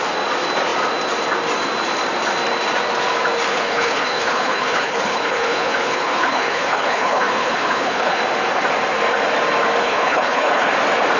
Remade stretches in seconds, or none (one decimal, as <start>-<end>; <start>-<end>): 3.5-8.2; 9.8-10.7